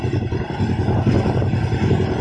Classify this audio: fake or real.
real